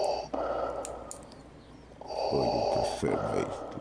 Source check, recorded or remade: recorded